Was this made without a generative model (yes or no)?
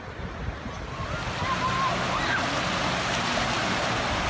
yes